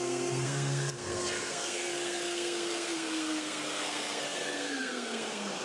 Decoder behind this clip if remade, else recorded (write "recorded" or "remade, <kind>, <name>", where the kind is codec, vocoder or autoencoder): remade, codec, SNAC